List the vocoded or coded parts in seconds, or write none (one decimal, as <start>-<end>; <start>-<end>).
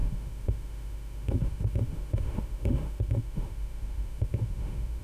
0.0-5.0